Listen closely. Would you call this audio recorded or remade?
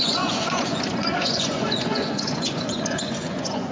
remade